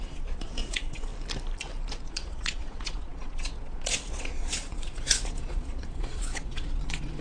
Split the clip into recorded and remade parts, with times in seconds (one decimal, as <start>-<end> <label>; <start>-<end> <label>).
0.0-1.1 remade; 1.1-1.9 recorded; 1.9-7.2 remade